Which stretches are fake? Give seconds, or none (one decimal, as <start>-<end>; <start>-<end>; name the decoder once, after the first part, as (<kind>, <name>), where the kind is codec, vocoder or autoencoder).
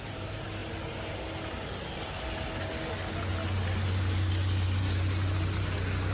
none